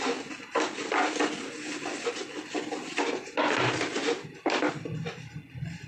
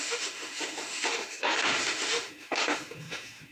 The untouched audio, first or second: first